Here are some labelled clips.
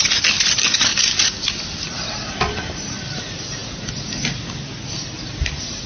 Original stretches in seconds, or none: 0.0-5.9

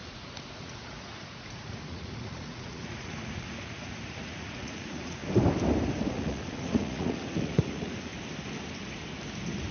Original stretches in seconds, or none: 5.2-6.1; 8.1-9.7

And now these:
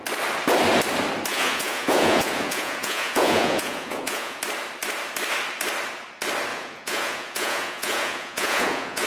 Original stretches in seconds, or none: 0.0-1.3; 4.4-6.5